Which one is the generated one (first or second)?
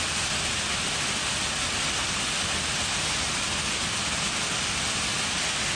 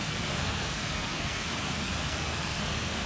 second